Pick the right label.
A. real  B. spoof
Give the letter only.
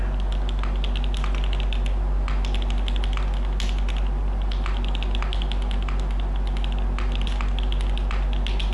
A